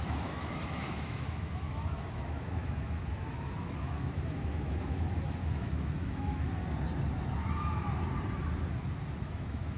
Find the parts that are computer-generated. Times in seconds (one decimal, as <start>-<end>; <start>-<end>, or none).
0.0-6.6; 9.2-9.8